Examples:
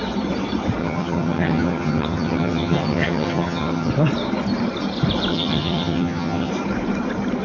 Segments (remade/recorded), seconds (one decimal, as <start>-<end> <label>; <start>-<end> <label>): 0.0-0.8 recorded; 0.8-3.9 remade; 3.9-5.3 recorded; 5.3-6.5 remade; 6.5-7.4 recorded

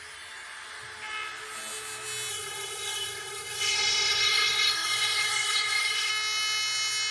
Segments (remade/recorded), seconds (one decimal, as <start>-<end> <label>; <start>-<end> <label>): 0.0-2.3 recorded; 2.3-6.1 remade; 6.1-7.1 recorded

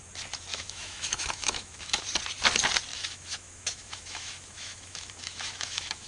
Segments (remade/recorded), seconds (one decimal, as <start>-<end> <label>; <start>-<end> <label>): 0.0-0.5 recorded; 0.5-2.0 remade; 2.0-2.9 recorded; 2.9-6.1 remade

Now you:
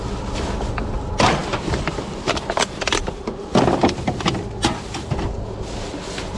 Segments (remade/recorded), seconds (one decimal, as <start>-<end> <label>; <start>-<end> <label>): 0.0-1.4 recorded; 1.4-5.2 remade; 5.2-6.4 recorded

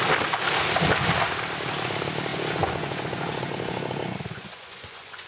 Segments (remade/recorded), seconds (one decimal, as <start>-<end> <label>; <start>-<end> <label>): 0.0-2.3 recorded; 2.3-5.3 remade